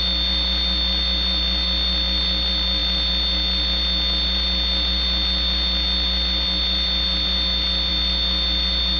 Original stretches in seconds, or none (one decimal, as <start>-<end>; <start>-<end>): 0.0-9.0